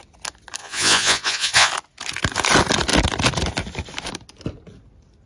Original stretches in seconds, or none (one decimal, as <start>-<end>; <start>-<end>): 0.0-0.6; 1.7-5.3